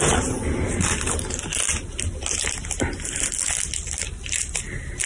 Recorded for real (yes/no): yes